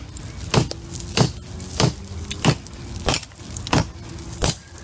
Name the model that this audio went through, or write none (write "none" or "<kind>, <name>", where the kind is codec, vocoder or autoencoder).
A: none